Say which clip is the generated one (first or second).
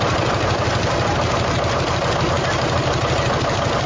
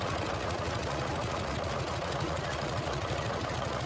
second